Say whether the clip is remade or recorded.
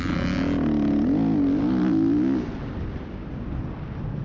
recorded